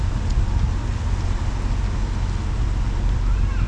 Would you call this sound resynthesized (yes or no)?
no